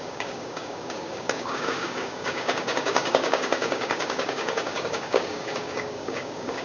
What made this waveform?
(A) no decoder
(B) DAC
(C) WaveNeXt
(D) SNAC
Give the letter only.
B